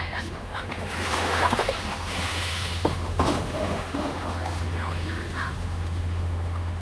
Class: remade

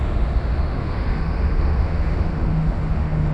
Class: remade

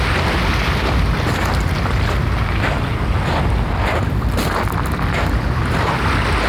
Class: recorded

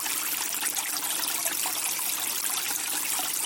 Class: recorded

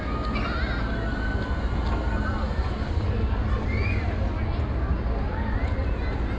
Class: recorded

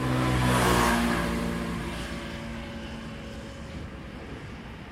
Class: recorded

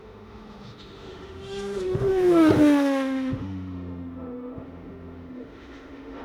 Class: remade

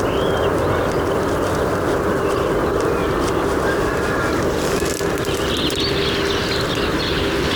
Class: recorded